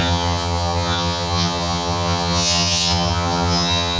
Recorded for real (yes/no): no